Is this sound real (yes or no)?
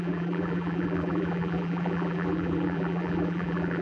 no